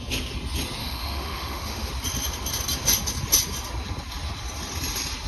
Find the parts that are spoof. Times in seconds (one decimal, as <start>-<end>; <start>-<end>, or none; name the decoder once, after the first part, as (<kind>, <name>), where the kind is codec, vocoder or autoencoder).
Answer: 0.8-1.9 (autoencoder, DAC-VAE)